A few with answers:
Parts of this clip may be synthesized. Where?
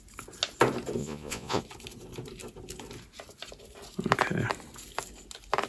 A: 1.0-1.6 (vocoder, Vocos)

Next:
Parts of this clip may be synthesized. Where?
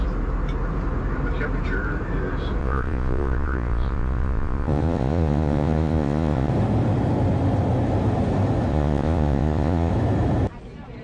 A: 2.6-6.5 (vocoder, Vocos); 8.7-9.9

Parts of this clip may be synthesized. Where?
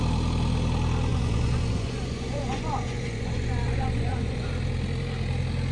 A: 1.1-4.5 (vocoder, Vocos)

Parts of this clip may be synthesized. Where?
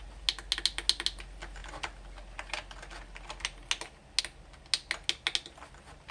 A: none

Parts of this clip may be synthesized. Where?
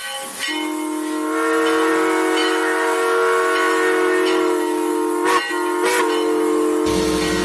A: none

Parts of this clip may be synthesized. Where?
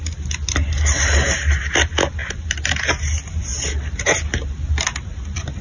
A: none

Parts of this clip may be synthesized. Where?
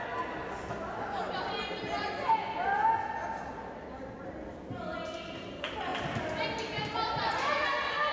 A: none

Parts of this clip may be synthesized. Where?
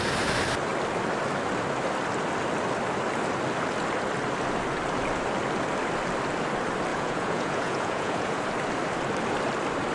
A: 6.9-8.4 (vocoder, Vocos)